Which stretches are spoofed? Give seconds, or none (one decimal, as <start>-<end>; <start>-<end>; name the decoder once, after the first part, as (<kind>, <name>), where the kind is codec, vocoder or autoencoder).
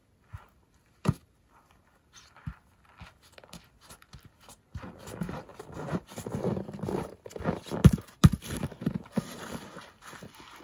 none